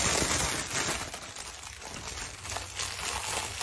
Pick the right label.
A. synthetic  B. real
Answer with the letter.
B